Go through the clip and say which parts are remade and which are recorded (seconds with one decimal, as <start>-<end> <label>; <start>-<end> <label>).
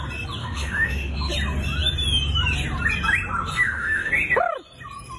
0.0-0.4 recorded; 0.4-1.3 remade; 1.3-3.5 recorded; 3.5-4.1 remade; 4.1-5.2 recorded